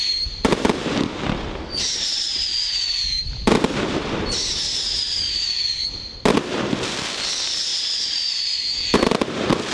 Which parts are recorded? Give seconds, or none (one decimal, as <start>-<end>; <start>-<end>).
none